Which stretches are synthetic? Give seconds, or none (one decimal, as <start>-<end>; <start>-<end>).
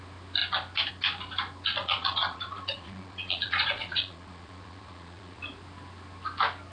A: 1.7-5.4